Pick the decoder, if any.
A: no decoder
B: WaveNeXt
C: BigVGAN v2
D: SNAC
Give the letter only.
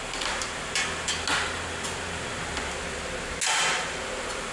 A